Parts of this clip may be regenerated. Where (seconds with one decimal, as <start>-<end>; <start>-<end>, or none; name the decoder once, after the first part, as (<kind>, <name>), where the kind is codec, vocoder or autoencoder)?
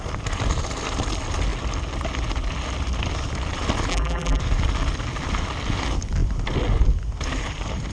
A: 3.9-4.4 (vocoder, BigVGAN v2)